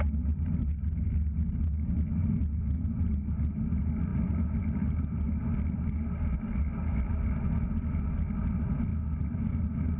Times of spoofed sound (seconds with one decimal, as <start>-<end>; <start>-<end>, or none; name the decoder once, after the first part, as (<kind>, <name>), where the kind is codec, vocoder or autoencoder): none

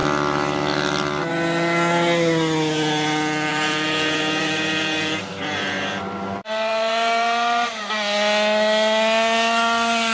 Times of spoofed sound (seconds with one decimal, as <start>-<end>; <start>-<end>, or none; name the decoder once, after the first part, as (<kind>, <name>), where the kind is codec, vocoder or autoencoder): 3.5-7.9 (vocoder, BigVGAN v2)